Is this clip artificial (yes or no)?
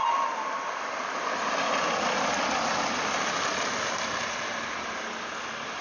no